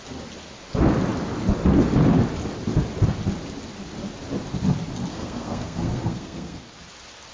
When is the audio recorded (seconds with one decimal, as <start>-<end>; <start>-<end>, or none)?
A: 0.0-5.1; 6.6-7.3